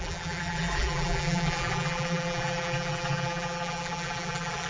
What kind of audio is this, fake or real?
fake